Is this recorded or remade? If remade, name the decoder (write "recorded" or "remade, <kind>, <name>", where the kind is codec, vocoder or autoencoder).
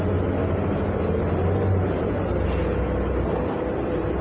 recorded